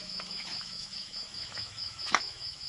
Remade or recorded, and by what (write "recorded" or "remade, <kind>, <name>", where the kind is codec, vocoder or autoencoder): remade, autoencoder, DAC-VAE